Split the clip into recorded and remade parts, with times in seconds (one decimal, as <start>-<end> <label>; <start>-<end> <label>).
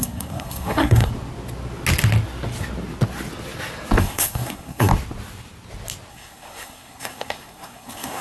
0.0-1.1 remade; 1.1-4.0 recorded; 4.0-4.9 remade; 4.9-6.1 recorded; 6.1-8.2 remade